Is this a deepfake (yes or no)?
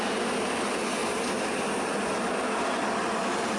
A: no